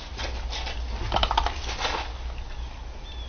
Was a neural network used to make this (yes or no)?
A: no